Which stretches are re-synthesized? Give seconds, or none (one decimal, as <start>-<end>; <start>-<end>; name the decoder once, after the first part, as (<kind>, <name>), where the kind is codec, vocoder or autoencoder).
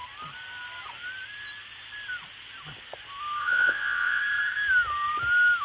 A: 3.4-4.2 (vocoder, Vocos)